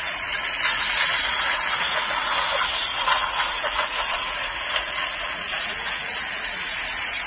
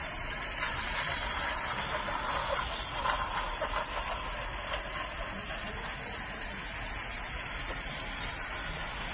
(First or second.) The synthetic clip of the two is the first